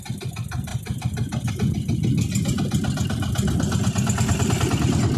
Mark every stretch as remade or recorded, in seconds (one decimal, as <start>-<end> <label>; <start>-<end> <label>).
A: 0.0-0.7 recorded; 0.7-1.5 remade; 1.5-5.2 recorded